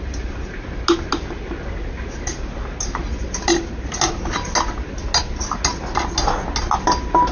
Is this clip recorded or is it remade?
recorded